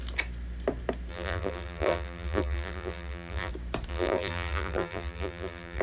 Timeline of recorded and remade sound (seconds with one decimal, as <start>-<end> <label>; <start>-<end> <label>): 0.0-1.1 recorded; 1.1-3.5 remade; 3.5-3.9 recorded; 3.9-5.8 remade

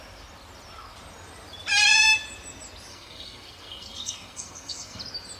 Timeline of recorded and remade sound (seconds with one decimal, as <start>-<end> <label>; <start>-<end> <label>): 0.0-2.9 recorded; 2.9-5.0 remade; 5.0-5.4 recorded

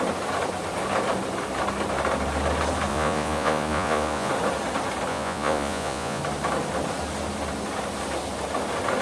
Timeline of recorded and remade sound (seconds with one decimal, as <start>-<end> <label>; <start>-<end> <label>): 0.0-2.9 recorded; 2.9-4.3 remade; 4.3-5.1 recorded; 5.1-6.2 remade; 6.2-9.0 recorded

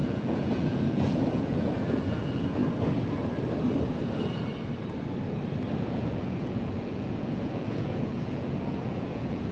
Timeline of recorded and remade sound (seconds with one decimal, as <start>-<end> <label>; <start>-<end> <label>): 0.0-2.6 remade; 2.6-5.8 recorded; 5.8-9.5 remade

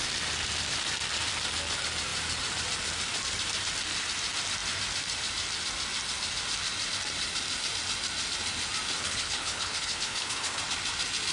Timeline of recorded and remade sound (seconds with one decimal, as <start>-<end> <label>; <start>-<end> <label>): 0.0-9.0 recorded; 9.0-10.6 remade; 10.6-11.3 recorded

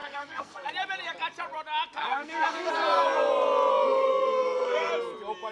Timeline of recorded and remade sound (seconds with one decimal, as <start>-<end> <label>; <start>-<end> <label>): 0.0-0.7 remade; 0.7-2.0 recorded; 2.0-2.7 remade; 2.7-3.7 recorded; 3.7-4.9 remade; 4.9-5.5 recorded

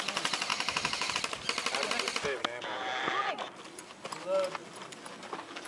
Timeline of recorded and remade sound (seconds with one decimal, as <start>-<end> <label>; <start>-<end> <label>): 0.0-0.5 recorded; 0.5-1.1 remade; 1.1-5.7 recorded